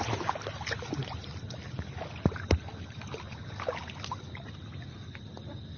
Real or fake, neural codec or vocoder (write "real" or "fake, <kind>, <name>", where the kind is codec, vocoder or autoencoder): real